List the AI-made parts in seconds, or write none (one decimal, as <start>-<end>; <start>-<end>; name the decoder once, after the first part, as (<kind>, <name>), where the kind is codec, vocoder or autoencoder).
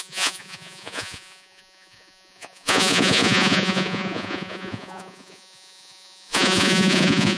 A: 0.0-7.4 (vocoder, Vocos)